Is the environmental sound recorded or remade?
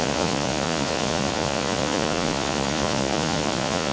remade